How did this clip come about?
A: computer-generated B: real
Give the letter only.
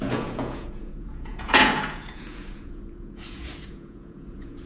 A